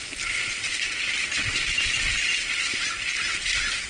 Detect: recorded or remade recorded